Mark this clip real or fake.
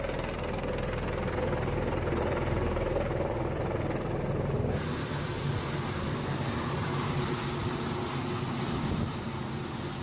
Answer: real